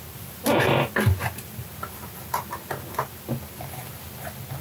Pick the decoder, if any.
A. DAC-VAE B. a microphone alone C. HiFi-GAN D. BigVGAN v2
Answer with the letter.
B